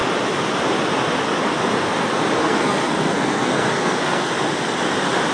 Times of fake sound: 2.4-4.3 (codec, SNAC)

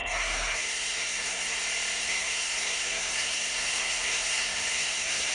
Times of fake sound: 0.0-1.6 (codec, SNAC); 2.0-5.3

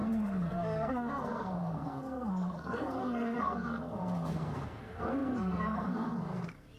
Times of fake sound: 0.0-6.8 (codec, SNAC)

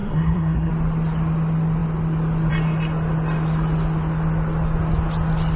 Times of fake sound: 0.0-0.7 (codec, SNAC)

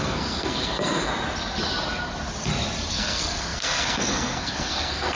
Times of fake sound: 0.0-1.1 (codec, SNAC); 2.9-5.1

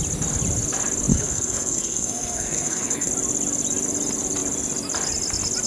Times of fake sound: 1.1-3.1 (codec, SNAC)

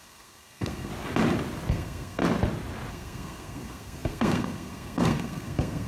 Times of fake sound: 0.0-0.9 (codec, SNAC); 1.7-2.2; 2.9-5.9

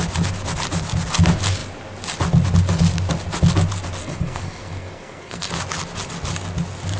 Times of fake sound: 4.0-5.5 (codec, SNAC)